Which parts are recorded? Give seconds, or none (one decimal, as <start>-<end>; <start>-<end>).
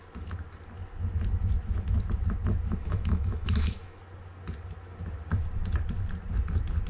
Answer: 0.0-2.8; 4.0-6.9